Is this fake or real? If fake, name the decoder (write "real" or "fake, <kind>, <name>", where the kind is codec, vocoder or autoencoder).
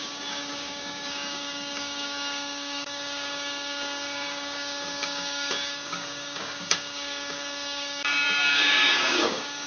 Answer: fake, codec, DAC